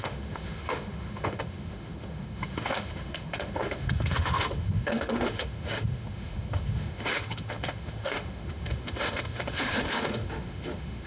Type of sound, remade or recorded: remade